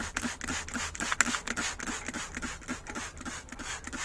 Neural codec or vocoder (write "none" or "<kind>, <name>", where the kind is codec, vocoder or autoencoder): none